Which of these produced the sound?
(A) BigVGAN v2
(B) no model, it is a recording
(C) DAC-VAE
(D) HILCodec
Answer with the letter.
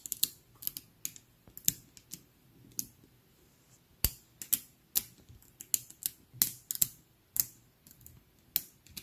B